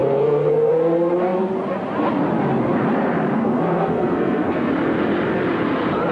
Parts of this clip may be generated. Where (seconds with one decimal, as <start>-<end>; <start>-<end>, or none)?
0.0-0.7; 3.4-4.7